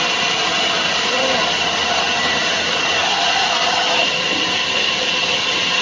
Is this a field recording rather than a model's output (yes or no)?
yes